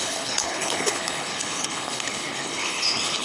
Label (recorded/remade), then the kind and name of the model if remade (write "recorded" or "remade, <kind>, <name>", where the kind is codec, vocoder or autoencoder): remade, codec, HILCodec